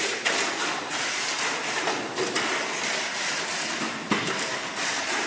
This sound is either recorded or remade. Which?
recorded